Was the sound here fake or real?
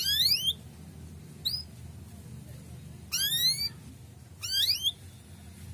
real